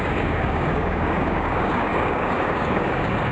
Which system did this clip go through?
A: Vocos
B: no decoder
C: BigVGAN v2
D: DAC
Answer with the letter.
D